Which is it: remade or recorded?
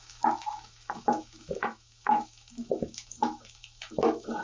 remade